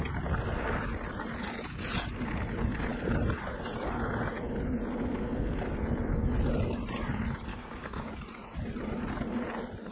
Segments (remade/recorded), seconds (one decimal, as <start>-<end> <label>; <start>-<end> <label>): 0.0-7.5 recorded; 7.5-8.1 remade; 8.1-9.9 recorded